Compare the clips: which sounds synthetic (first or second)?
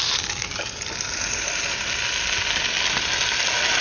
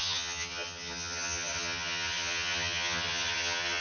second